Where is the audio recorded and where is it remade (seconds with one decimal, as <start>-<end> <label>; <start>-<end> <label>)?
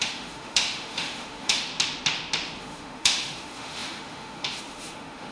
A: 0.0-1.7 remade; 1.7-2.6 recorded; 2.6-5.3 remade